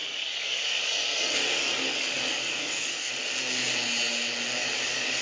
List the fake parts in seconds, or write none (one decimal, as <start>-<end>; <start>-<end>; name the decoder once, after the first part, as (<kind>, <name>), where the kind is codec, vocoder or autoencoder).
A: 0.0-3.1 (codec, DAC); 4.6-5.2